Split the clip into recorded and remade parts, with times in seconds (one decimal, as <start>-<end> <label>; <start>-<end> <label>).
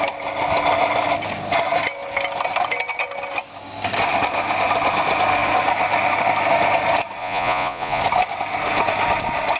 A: 0.0-7.2 recorded; 7.2-8.0 remade; 8.0-9.6 recorded